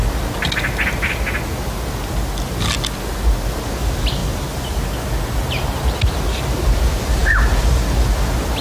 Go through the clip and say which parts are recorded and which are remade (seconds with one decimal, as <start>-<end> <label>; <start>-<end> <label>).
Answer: 0.0-8.6 recorded